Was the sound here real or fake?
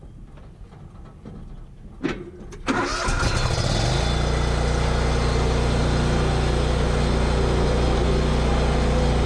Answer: real